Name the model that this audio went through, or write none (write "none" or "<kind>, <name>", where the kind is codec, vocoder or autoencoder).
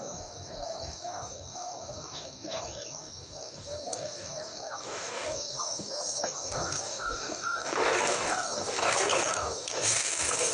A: codec, DAC